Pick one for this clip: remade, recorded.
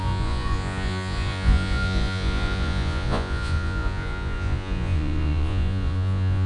remade